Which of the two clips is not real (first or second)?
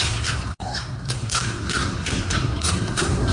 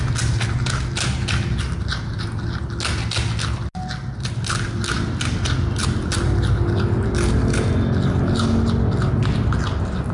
first